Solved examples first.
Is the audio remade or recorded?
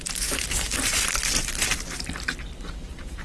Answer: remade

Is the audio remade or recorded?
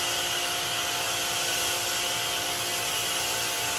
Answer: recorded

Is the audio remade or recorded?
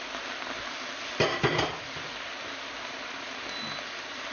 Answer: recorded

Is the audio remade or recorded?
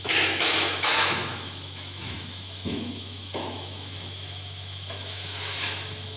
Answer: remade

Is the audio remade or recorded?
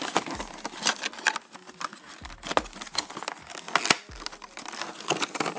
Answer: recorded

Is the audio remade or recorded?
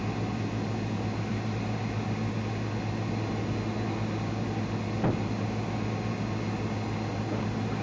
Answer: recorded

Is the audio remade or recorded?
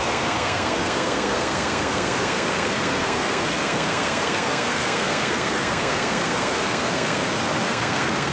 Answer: remade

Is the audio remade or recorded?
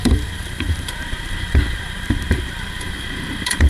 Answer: remade